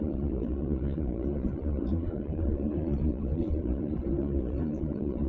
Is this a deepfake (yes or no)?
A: yes